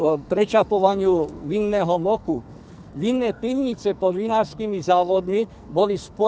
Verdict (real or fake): fake